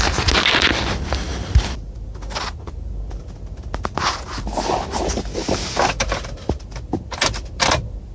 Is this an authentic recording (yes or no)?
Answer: yes